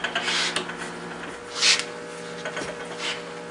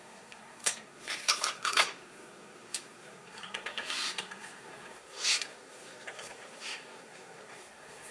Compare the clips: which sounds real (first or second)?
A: first